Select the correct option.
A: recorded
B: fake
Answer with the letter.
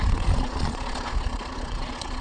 B